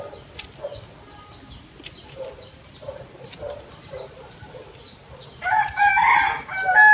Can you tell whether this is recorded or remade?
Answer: recorded